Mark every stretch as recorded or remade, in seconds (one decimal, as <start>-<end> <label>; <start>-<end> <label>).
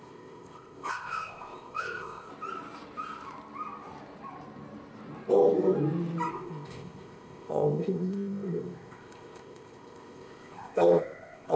0.0-2.3 remade; 2.3-6.3 recorded; 6.3-11.6 remade